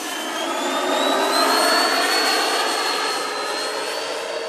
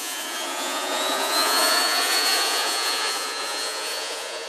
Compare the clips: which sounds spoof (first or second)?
second